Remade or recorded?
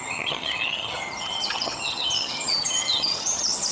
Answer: remade